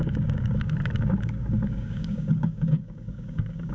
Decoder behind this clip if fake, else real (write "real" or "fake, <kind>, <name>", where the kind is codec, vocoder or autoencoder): fake, codec, DAC